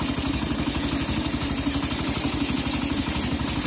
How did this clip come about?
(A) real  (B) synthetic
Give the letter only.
A